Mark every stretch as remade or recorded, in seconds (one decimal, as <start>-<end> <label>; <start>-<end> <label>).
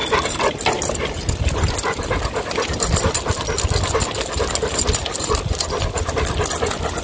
0.0-7.0 recorded